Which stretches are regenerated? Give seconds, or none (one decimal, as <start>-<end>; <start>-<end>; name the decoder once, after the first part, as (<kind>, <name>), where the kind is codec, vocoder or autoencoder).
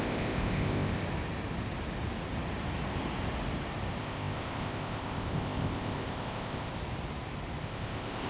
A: 0.0-1.0 (codec, ZipCodec); 4.0-6.7; 7.6-8.3